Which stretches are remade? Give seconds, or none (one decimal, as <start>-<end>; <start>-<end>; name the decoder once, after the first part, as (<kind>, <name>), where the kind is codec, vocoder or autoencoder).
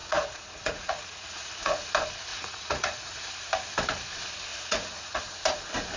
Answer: 0.0-1.9 (vocoder, Vocos); 2.3-3.2; 4.5-5.2